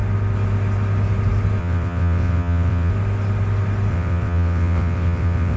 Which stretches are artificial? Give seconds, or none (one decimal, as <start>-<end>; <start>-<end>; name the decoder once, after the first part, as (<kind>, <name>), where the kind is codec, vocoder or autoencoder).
1.6-2.9 (vocoder, WaveNeXt); 3.9-5.6